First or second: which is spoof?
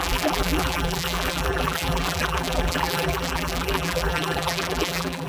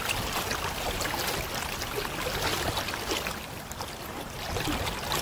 first